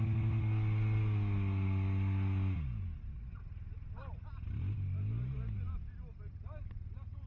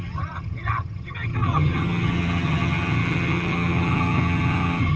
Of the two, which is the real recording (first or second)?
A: first